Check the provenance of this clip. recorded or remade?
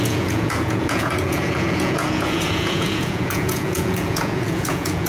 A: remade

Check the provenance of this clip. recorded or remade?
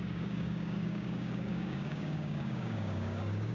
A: remade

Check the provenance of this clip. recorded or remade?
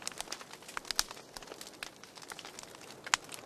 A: recorded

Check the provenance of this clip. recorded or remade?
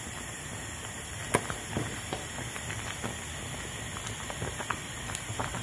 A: recorded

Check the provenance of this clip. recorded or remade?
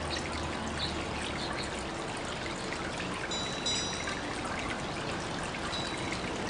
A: recorded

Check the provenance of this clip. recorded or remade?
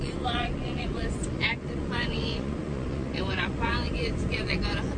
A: remade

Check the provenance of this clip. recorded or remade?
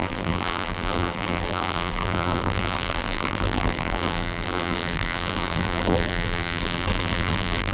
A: remade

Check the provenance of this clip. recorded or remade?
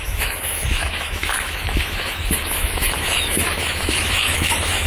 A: remade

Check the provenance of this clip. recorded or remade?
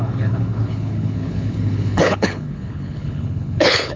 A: remade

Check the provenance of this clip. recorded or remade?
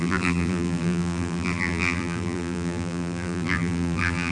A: remade